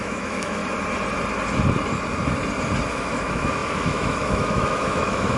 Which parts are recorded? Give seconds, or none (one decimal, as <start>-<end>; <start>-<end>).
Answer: 0.6-2.9